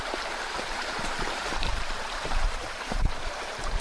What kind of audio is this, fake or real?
fake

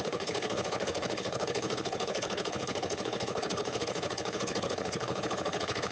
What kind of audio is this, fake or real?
fake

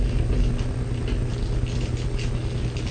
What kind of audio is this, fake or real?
real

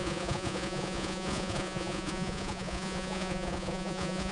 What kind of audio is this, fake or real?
fake